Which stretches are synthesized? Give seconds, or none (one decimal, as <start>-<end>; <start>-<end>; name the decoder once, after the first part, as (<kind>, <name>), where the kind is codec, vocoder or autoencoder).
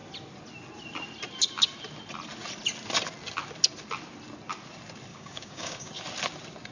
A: 5.1-5.9 (codec, DAC)